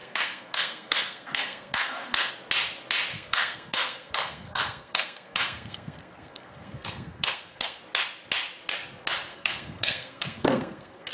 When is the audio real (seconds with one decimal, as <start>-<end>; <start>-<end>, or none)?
2.3-3.1; 7.8-9.3